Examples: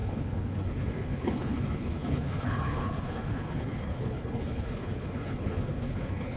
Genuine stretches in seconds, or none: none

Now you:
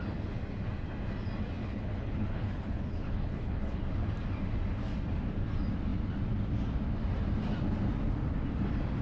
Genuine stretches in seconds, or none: 0.0-1.6; 3.8-9.0

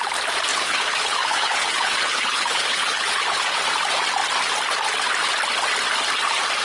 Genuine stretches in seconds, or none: 0.0-0.5; 3.6-6.6

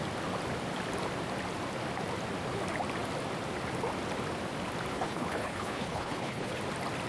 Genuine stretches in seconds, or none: 0.0-4.9; 6.6-7.1

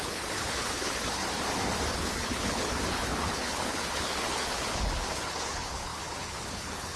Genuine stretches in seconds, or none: 1.2-1.9

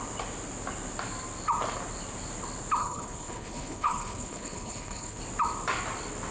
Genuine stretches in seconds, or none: 0.0-2.8; 5.2-6.3